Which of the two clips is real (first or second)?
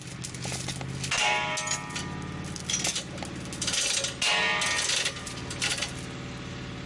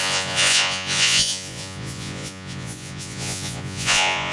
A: first